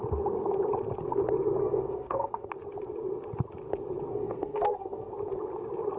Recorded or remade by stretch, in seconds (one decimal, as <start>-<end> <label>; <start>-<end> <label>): 0.0-1.6 recorded; 1.6-2.5 remade; 2.5-4.1 recorded; 4.1-5.1 remade; 5.1-6.0 recorded